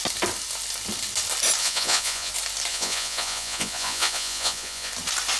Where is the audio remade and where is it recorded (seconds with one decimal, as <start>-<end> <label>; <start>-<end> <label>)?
0.0-1.6 recorded; 1.6-2.3 remade; 2.3-2.7 recorded; 2.7-4.9 remade; 4.9-5.4 recorded